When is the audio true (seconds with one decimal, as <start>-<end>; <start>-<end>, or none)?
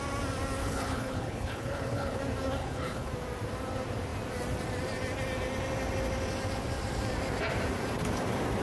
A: 0.0-0.6; 2.2-2.6; 3.1-8.6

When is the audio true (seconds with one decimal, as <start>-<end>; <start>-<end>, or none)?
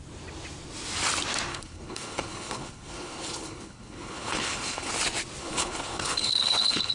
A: 0.0-1.5; 4.9-5.4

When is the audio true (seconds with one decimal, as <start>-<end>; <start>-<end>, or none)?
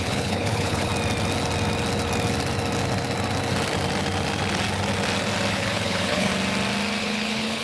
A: 0.9-5.5; 6.3-7.0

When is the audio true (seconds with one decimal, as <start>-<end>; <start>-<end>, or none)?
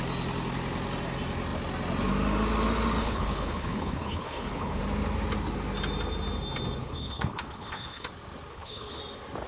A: 0.0-3.0; 4.8-6.8; 8.1-8.5; 9.0-9.5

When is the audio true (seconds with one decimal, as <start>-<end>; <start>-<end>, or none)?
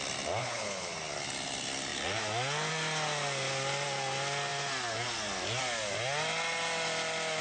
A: 0.0-0.4; 0.9-7.4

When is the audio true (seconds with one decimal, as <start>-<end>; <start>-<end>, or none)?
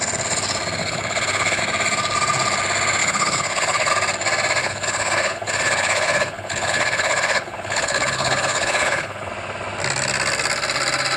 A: 0.0-0.8; 1.6-3.0; 3.9-4.6; 9.3-11.2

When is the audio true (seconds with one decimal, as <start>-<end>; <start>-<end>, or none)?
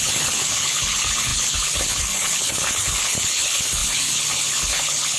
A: none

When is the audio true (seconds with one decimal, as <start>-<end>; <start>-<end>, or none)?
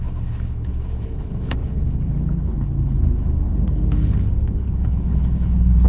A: none